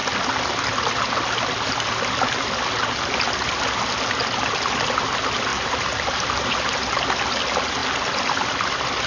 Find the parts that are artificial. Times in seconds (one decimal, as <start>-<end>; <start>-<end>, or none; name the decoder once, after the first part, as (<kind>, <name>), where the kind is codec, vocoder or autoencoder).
5.5-7.0 (vocoder, BigVGAN v2)